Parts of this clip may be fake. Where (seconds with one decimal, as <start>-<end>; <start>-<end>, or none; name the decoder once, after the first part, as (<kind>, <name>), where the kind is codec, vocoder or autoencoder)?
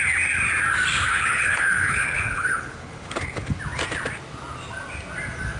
1.1-3.5 (codec, HILCodec)